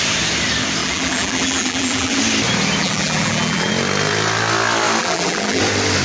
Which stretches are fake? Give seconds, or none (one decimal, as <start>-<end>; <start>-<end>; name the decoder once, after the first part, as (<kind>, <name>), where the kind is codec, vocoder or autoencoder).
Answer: 0.8-2.2 (vocoder, BigVGAN v2); 2.8-3.7; 5.0-5.6